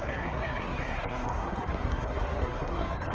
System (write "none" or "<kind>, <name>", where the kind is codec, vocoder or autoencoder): codec, SNAC